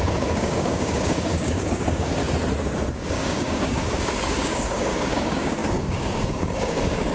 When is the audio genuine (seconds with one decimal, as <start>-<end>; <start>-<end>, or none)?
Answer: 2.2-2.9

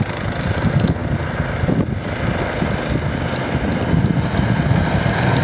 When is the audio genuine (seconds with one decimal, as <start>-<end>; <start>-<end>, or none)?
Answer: 0.0-5.4

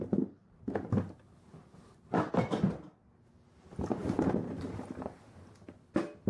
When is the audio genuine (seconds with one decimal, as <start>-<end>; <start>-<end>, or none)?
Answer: 0.0-0.4; 2.3-4.0; 4.9-6.3

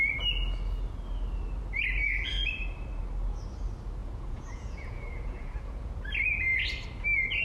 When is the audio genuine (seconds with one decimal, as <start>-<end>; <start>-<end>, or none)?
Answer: 0.0-4.0; 5.9-7.4

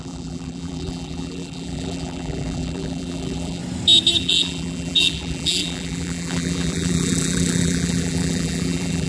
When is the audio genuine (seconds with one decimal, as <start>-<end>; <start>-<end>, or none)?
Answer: 3.6-4.2

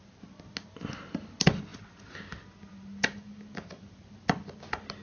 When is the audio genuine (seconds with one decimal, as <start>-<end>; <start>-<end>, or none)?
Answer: 0.0-5.0

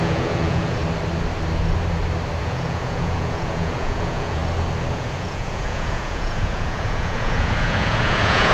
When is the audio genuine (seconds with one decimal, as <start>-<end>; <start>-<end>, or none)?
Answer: 0.8-2.4; 4.4-4.9